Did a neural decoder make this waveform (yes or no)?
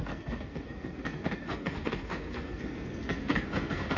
yes